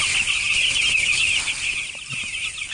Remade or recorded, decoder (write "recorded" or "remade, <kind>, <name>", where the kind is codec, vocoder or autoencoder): recorded